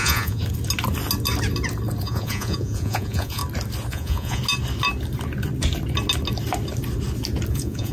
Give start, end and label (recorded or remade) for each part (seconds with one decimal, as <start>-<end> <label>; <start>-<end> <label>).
0.0-0.4 remade; 0.4-2.0 recorded; 2.0-3.4 remade; 3.4-3.9 recorded; 3.9-4.4 remade; 4.4-7.5 recorded; 7.5-7.9 remade